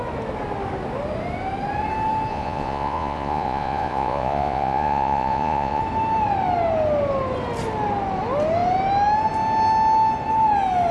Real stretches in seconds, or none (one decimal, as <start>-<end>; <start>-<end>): 0.0-2.3; 5.8-10.9